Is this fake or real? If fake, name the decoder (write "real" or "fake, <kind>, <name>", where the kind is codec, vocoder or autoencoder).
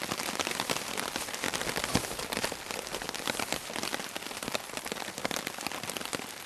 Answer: real